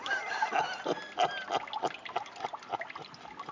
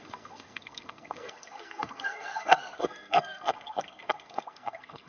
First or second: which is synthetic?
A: second